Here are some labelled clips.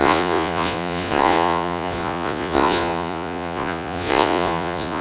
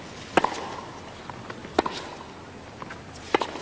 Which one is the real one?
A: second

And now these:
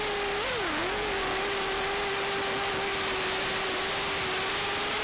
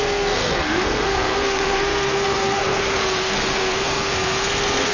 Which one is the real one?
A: first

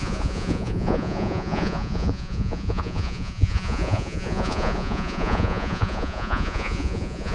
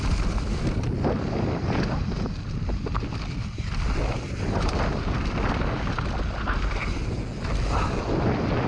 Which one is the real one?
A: second